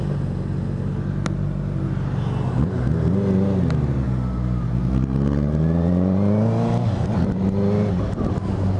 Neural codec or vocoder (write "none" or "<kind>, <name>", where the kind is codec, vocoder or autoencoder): none